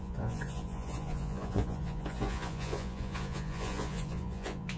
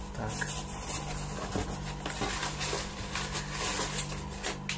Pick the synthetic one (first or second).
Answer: first